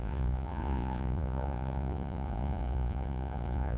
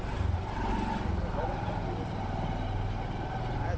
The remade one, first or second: first